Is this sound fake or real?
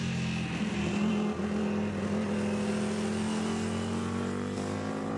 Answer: real